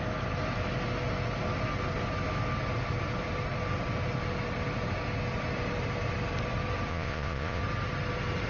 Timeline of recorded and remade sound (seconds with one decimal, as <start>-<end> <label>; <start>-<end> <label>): 0.0-6.9 recorded; 6.9-7.6 remade; 7.6-8.5 recorded